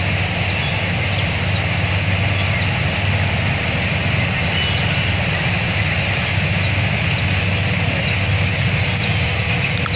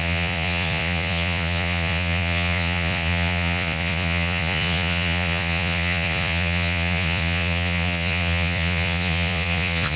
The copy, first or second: second